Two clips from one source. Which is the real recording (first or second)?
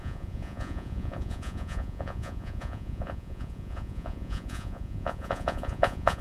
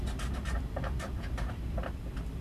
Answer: second